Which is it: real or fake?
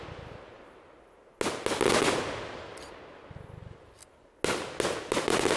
real